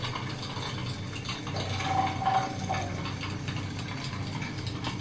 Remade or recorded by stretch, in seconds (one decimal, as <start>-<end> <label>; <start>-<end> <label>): 0.0-5.0 recorded